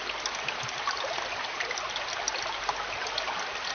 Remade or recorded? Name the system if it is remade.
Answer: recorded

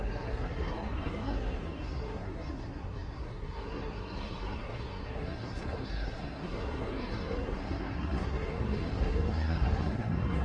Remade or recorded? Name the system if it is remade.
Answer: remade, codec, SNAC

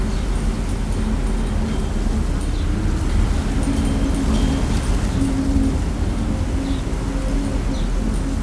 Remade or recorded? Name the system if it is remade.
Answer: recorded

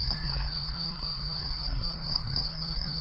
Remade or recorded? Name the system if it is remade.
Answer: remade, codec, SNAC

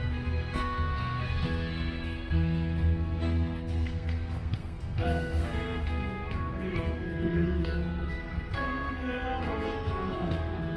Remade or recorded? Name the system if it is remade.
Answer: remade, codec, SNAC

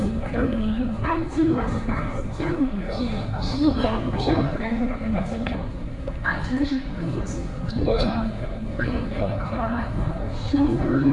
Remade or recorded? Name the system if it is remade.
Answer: remade, codec, SNAC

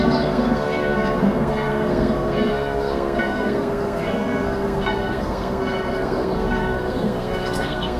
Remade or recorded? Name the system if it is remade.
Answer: remade, codec, SNAC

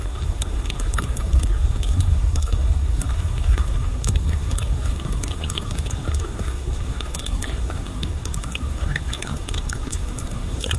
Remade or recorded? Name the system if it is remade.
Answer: remade, codec, SNAC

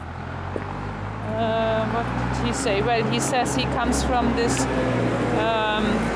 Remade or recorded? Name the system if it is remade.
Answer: recorded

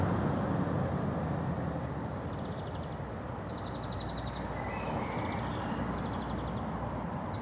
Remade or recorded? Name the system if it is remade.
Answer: recorded